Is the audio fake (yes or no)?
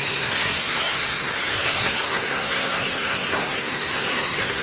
yes